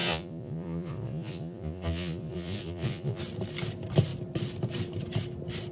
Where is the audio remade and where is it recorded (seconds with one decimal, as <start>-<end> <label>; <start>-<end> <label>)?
0.0-3.2 remade; 3.2-5.7 recorded